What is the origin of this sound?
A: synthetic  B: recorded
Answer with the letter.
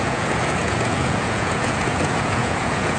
A